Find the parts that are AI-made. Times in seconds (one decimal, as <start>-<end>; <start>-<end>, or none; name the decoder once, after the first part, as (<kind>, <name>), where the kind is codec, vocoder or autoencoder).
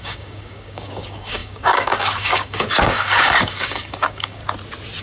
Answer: 0.0-4.4 (codec, DAC)